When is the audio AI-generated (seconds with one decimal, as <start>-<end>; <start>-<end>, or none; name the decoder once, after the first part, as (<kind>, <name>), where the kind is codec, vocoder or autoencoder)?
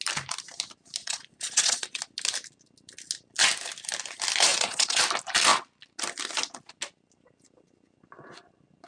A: 1.0-2.0 (vocoder, Vocos); 4.5-5.0